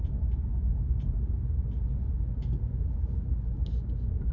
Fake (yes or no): no